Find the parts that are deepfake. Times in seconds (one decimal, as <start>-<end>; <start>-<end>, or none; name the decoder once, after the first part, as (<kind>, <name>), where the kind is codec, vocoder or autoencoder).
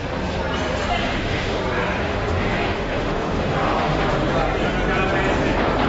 1.0-1.6 (autoencoder, DAC-VAE); 2.0-4.3